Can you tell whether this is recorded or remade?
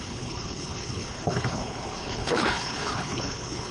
remade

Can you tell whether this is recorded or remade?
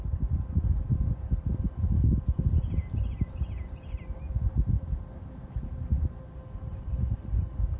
recorded